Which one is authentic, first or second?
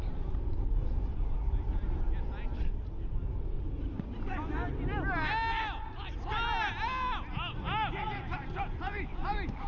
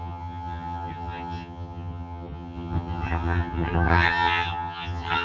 first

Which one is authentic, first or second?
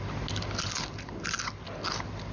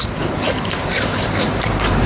first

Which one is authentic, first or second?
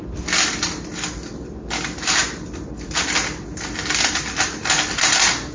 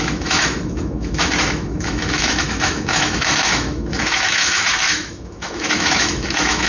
first